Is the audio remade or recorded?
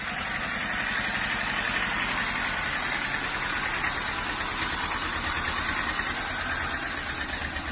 recorded